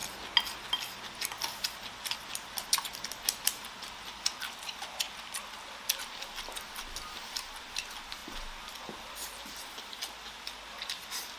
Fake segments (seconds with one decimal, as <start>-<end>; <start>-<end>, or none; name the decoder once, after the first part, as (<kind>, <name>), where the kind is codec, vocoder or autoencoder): none